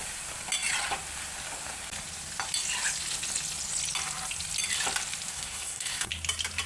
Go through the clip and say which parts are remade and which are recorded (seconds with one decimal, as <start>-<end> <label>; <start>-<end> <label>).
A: 0.0-5.3 recorded; 5.3-6.1 remade; 6.1-6.7 recorded